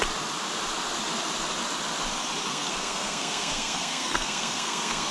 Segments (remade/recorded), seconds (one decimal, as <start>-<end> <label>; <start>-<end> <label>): 0.0-2.5 recorded; 2.5-5.1 remade